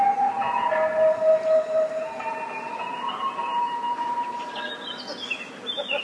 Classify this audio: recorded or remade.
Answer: recorded